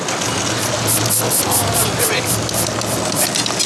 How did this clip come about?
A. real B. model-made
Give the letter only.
A